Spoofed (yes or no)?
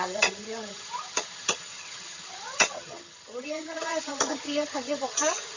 yes